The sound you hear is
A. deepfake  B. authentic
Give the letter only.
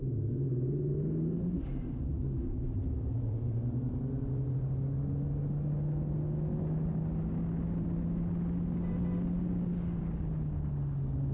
B